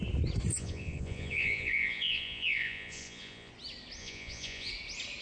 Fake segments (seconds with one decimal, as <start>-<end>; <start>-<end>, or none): 0.5-3.5; 4.0-4.7